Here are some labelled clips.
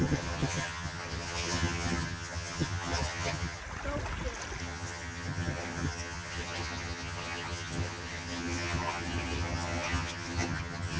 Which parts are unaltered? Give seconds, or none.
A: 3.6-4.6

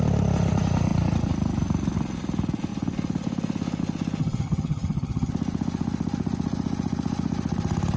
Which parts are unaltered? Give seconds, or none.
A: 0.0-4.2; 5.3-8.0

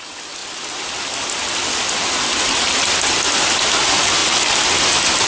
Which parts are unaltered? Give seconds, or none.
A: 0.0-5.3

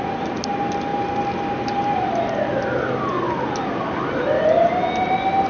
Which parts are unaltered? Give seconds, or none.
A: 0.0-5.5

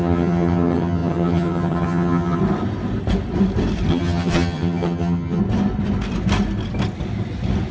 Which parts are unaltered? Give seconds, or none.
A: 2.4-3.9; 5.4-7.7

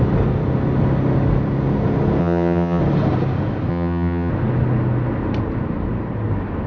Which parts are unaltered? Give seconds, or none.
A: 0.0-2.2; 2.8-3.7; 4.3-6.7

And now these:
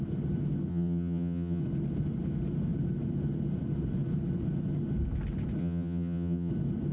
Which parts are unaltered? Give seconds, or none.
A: 0.0-0.7; 1.6-5.6; 6.5-6.9